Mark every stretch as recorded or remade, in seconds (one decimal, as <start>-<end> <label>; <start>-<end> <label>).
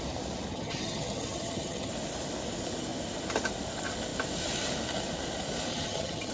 0.0-0.5 recorded; 0.5-1.9 remade; 1.9-5.7 recorded; 5.7-6.3 remade